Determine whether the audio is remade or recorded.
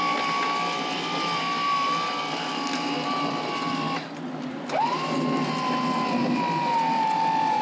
recorded